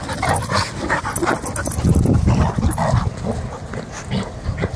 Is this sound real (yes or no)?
yes